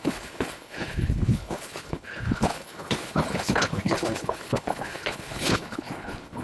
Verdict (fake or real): fake